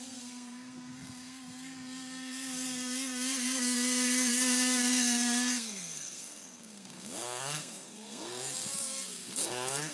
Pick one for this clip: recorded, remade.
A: remade